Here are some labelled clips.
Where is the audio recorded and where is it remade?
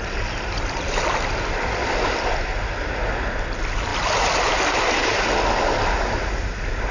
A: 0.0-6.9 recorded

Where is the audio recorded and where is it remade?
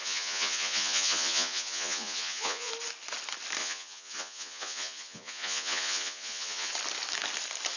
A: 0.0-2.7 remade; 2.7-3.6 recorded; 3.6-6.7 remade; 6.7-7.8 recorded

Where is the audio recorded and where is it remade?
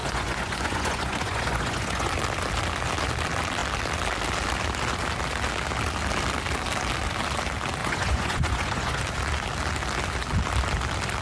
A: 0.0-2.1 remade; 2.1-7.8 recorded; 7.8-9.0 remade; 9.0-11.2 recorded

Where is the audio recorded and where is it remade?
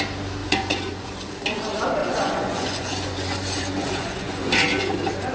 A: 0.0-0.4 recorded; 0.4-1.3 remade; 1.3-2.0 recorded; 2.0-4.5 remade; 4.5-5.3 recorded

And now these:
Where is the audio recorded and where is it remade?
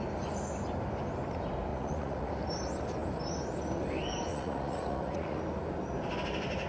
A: 0.0-1.7 recorded; 1.7-2.3 remade; 2.3-4.3 recorded; 4.3-5.4 remade; 5.4-6.7 recorded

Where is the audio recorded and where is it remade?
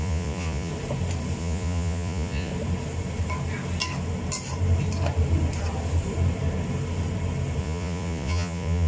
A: 0.0-0.7 remade; 0.7-1.4 recorded; 1.4-2.5 remade; 2.5-7.6 recorded; 7.6-8.9 remade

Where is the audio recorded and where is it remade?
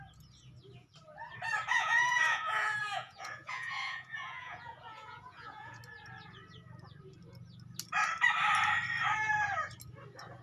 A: 0.0-1.7 recorded; 1.7-5.8 remade; 5.8-10.4 recorded